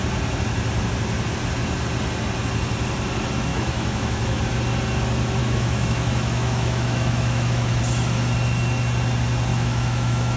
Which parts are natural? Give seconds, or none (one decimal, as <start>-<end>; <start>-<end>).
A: 0.0-3.5; 4.4-5.4; 7.8-9.5